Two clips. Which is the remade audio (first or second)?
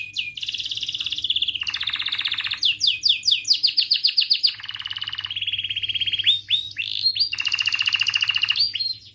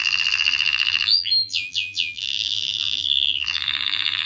second